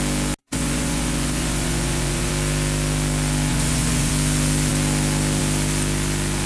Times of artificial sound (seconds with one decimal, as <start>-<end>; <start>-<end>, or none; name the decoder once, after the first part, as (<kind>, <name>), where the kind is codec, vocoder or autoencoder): 0.4-2.3 (vocoder, Vocos); 3.5-4.1